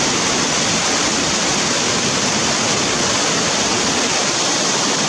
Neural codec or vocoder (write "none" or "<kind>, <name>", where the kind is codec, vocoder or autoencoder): none